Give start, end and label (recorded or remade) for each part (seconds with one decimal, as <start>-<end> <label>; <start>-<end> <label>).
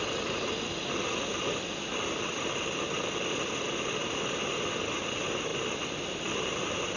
0.0-7.0 recorded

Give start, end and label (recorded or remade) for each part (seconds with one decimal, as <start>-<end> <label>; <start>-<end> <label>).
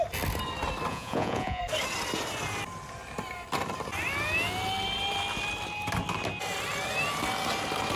0.0-0.9 recorded; 0.9-1.6 remade; 1.6-8.0 recorded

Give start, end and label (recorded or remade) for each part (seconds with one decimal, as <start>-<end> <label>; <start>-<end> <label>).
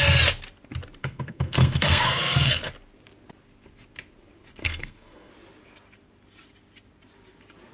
0.0-1.0 recorded; 1.0-2.7 remade; 2.7-4.6 recorded; 4.6-5.3 remade; 5.3-7.7 recorded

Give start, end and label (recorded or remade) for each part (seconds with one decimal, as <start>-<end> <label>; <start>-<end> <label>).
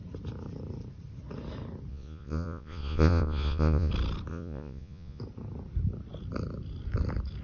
0.0-1.9 recorded; 1.9-3.9 remade; 3.9-4.3 recorded; 4.3-5.2 remade; 5.2-7.4 recorded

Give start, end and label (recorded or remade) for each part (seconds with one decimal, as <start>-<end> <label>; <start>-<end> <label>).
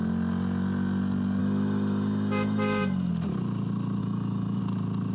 0.0-1.4 recorded; 1.4-3.1 remade; 3.1-4.0 recorded; 4.0-4.6 remade; 4.6-5.1 recorded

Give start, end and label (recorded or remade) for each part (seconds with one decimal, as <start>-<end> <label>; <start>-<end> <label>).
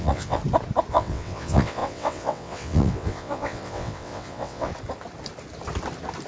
0.0-0.4 remade; 0.4-0.9 recorded; 0.9-4.7 remade; 4.7-6.3 recorded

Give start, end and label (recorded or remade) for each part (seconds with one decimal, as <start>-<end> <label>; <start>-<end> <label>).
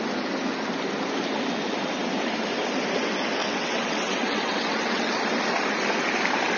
0.0-3.4 recorded; 3.4-5.2 remade; 5.2-6.6 recorded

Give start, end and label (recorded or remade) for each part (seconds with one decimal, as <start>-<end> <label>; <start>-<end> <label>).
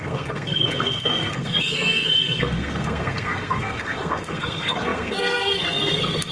0.0-6.3 remade